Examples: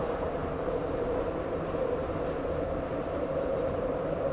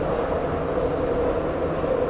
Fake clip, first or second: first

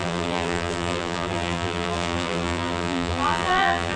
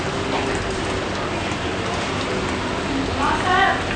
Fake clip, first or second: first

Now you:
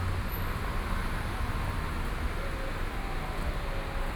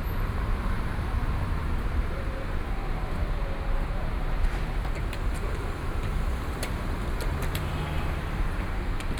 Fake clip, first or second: second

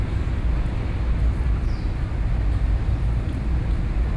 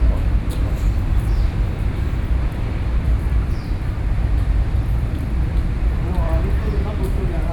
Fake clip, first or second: second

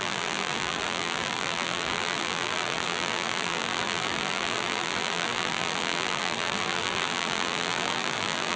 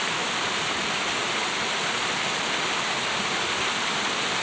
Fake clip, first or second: first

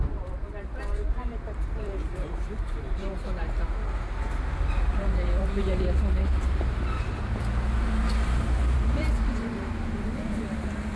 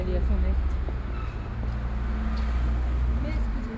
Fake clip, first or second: first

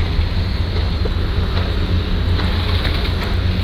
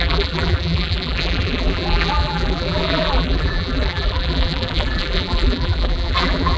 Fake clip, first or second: second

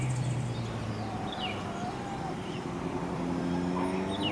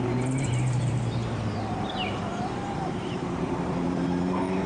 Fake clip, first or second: second